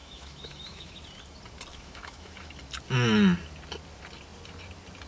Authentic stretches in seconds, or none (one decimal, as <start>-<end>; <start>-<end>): 1.0-1.7; 2.6-5.1